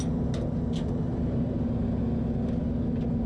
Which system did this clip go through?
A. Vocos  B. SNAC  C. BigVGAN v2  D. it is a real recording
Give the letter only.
D